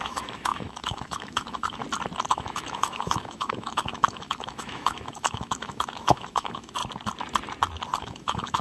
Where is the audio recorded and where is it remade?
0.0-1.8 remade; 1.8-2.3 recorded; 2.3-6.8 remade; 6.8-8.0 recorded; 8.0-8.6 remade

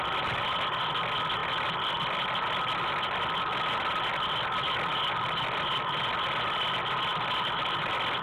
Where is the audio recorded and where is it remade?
0.0-8.2 recorded